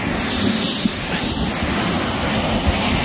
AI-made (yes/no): no